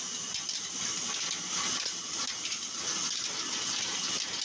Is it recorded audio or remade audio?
recorded